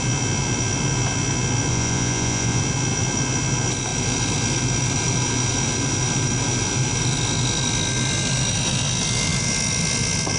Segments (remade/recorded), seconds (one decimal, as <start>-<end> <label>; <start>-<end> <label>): 0.0-1.7 recorded; 1.7-2.6 remade; 2.6-10.4 recorded